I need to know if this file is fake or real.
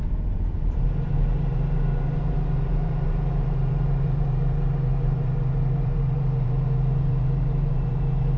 fake